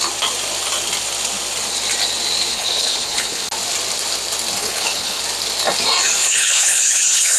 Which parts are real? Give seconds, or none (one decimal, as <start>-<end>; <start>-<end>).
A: 0.0-2.5; 3.5-4.6; 5.2-6.2